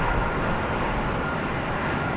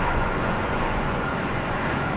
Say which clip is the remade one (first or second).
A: second